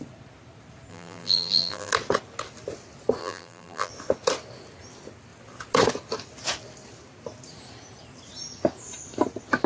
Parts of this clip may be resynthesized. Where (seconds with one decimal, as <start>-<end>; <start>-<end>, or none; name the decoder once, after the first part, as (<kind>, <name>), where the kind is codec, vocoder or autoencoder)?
0.9-1.9 (vocoder, BigVGAN v2); 3.2-3.9